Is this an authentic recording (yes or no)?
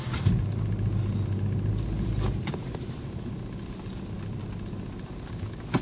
yes